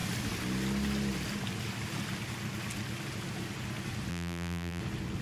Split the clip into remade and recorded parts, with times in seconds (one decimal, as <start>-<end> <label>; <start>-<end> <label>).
0.0-4.1 recorded; 4.1-4.8 remade; 4.8-5.2 recorded

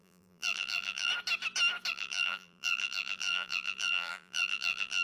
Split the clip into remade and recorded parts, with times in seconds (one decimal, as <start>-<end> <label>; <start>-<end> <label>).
0.0-1.1 remade; 1.1-1.9 recorded; 1.9-5.0 remade

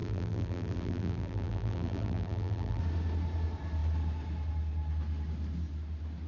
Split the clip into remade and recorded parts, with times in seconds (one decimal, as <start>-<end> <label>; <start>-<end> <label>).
0.0-2.8 remade; 2.8-6.3 recorded

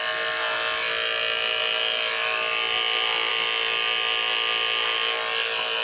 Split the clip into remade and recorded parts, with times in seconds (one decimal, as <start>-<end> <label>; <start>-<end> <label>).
0.0-5.8 recorded